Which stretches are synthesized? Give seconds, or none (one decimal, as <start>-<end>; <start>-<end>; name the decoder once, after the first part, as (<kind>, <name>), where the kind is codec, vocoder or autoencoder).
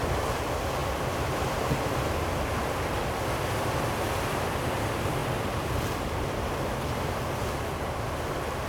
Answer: none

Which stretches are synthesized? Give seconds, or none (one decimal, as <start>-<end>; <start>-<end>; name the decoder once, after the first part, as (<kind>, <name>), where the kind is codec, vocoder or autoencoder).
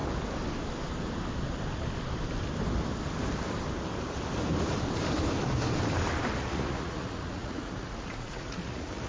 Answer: 6.4-9.1 (vocoder, Vocos)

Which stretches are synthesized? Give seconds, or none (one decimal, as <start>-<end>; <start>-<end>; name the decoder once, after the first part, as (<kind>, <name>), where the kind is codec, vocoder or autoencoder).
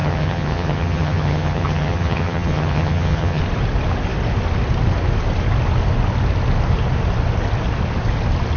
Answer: 0.0-3.4 (vocoder, HiFi-GAN)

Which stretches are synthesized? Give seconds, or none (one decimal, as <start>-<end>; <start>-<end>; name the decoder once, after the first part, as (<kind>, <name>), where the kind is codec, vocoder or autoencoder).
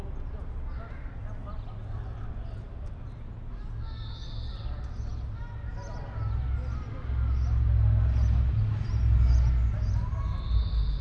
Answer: none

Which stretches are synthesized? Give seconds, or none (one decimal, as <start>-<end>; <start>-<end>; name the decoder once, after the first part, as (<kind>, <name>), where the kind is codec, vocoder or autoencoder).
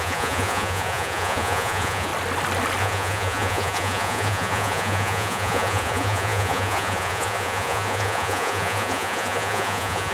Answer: 0.0-2.1 (vocoder, Vocos); 2.8-10.1